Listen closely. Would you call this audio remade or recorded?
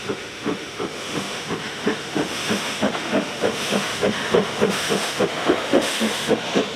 remade